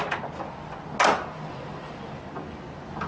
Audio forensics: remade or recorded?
recorded